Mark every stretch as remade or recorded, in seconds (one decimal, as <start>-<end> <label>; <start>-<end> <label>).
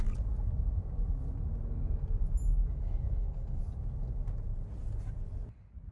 0.0-2.6 recorded; 2.6-3.6 remade; 3.6-5.9 recorded